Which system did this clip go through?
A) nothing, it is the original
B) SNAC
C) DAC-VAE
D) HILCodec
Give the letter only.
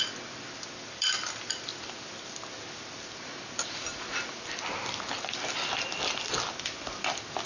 A